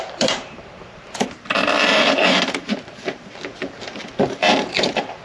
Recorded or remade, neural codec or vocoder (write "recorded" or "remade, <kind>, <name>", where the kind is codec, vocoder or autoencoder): remade, vocoder, BigVGAN v2